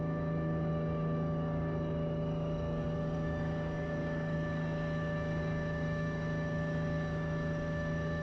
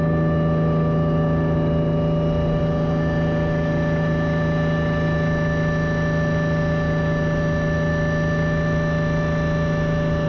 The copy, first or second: first